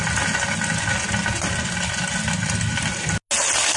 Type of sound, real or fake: real